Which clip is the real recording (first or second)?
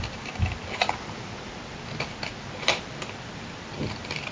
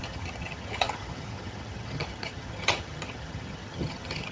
first